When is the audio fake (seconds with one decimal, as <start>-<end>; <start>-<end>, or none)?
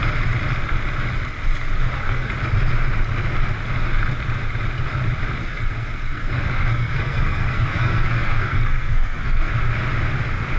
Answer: 1.8-2.3; 5.4-9.5